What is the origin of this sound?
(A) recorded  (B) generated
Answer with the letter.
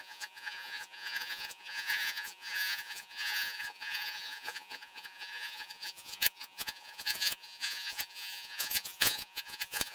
B